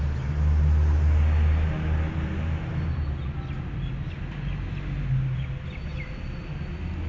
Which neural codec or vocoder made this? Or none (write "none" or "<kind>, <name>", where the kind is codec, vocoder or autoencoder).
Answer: none